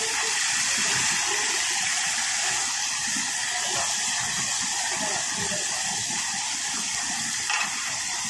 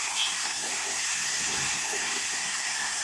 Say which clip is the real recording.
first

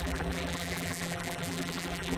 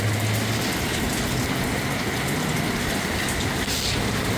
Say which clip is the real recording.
second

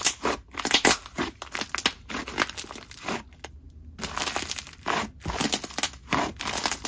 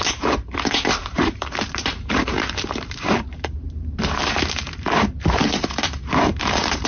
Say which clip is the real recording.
first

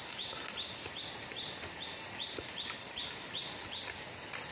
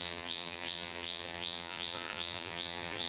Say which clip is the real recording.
first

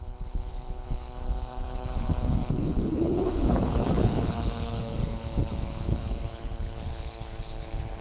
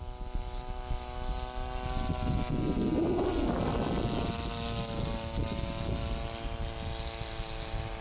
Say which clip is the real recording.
second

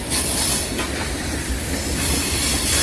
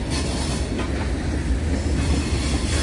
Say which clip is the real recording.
second